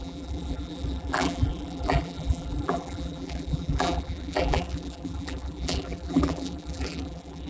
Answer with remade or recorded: remade